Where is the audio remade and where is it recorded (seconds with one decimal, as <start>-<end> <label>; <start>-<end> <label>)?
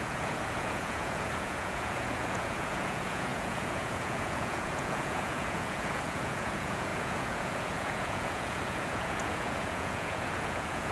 0.0-10.9 remade